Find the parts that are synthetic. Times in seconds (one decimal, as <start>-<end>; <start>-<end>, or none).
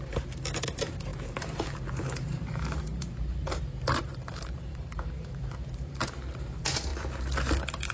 0.0-6.9; 7.5-7.9